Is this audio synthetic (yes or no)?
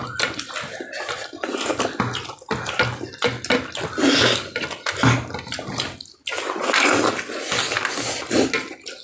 no